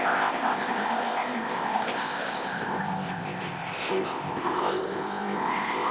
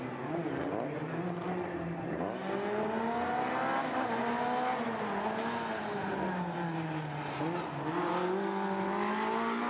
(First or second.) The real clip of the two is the second